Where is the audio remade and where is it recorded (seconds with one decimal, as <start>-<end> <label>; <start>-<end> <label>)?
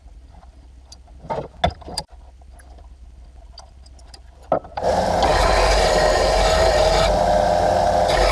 0.0-5.3 recorded; 5.3-6.8 remade; 6.8-8.3 recorded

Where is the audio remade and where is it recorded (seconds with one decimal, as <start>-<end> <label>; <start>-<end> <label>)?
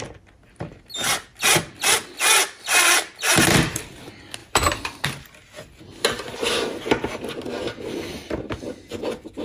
0.0-2.4 recorded; 2.4-4.0 remade; 4.0-4.4 recorded; 4.4-5.1 remade; 5.1-8.1 recorded; 8.1-8.7 remade; 8.7-9.4 recorded